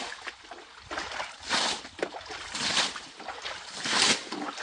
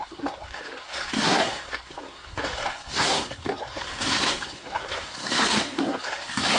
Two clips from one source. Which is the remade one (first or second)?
second